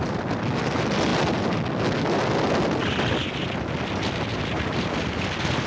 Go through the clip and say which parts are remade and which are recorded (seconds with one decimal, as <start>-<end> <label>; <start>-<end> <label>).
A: 0.0-5.7 recorded